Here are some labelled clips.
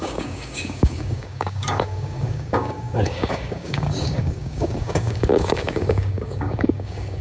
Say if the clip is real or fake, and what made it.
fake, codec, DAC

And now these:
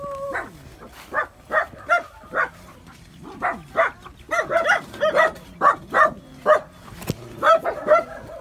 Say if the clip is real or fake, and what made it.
real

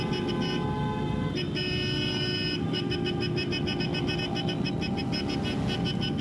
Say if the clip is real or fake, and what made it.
real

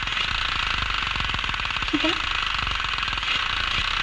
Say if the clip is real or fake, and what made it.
real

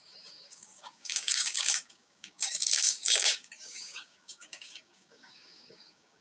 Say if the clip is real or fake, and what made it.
fake, codec, DAC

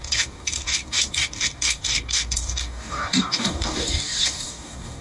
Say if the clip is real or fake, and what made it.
fake, codec, DAC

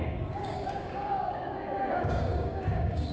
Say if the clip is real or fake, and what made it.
fake, codec, DAC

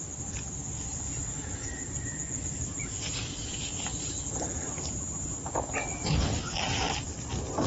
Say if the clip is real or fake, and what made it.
real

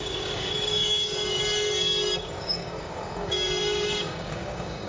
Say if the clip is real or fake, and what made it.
fake, codec, DAC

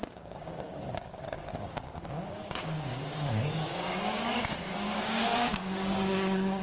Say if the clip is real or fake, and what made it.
fake, codec, DAC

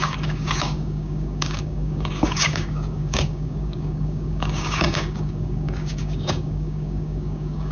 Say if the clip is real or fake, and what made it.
fake, codec, DAC